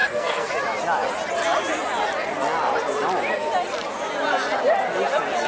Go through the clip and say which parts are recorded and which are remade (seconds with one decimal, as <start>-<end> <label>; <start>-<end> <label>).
0.0-0.5 remade; 0.5-5.5 recorded